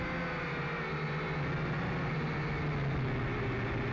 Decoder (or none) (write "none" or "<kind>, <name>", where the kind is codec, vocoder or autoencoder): none